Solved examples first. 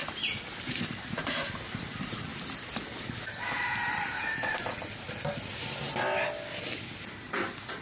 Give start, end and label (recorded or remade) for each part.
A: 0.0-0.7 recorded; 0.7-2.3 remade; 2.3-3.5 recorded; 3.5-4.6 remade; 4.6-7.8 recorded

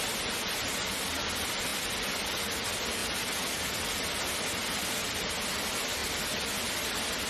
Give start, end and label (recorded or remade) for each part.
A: 0.0-7.3 recorded